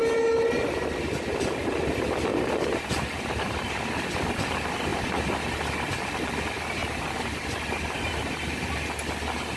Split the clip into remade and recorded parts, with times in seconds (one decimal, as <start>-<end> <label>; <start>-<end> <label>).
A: 0.0-2.3 recorded; 2.3-3.8 remade; 3.8-6.8 recorded; 6.8-8.7 remade; 8.7-9.6 recorded